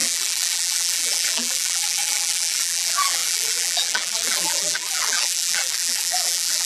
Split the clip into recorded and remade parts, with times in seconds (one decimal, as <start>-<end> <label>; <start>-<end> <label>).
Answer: 0.0-6.7 remade